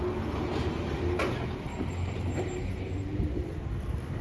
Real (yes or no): yes